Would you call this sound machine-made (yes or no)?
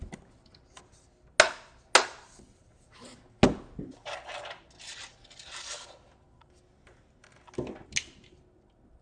no